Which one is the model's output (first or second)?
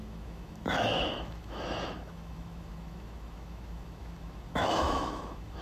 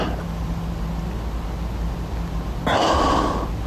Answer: first